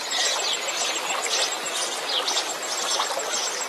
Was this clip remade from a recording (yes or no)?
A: no